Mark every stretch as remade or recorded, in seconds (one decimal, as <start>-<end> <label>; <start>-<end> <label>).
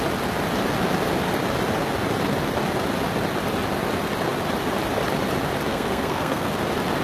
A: 0.0-5.7 recorded; 5.7-6.5 remade; 6.5-7.0 recorded